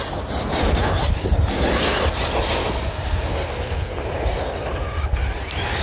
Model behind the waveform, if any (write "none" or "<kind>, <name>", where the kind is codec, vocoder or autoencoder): none